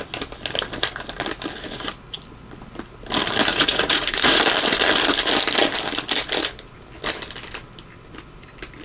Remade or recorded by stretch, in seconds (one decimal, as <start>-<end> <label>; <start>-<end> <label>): 0.0-3.5 recorded; 3.5-4.4 remade; 4.4-8.8 recorded